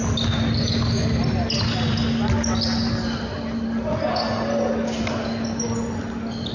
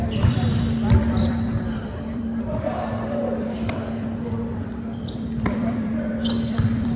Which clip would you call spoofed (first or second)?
second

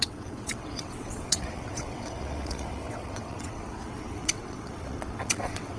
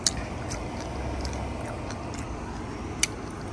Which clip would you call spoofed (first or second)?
first